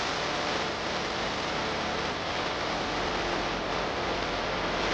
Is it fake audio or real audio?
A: real